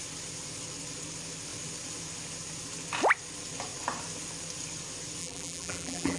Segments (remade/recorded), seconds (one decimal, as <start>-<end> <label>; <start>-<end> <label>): 0.0-5.2 recorded; 5.2-6.2 remade

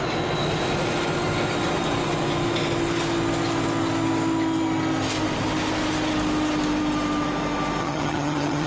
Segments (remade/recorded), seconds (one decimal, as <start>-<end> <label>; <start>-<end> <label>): 0.0-7.8 recorded; 7.8-8.7 remade

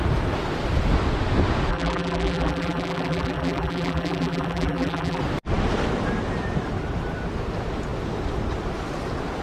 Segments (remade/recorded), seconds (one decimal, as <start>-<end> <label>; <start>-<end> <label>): 0.0-1.7 recorded; 1.7-5.2 remade; 5.2-9.4 recorded

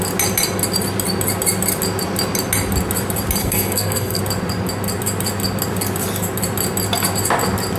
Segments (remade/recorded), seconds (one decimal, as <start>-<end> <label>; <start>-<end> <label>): 0.0-3.4 recorded; 3.4-4.2 remade; 4.2-7.8 recorded

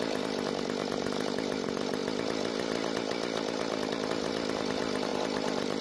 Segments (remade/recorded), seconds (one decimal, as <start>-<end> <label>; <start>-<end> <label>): 0.0-5.1 recorded; 5.1-5.8 remade